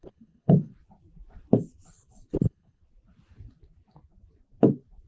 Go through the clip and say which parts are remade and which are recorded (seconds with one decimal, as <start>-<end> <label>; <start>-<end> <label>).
0.0-0.7 remade; 0.7-2.3 recorded; 2.3-2.8 remade; 2.8-5.1 recorded